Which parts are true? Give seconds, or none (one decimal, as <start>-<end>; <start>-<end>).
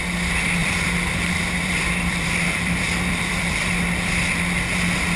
0.0-0.6; 3.7-5.2